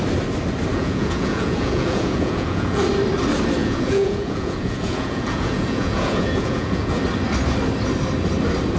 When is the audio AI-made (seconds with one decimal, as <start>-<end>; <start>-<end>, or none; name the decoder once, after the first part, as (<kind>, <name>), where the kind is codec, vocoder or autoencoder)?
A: 0.7-2.8 (vocoder, Vocos); 3.6-7.0